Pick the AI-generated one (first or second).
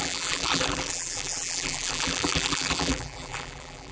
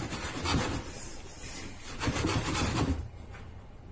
first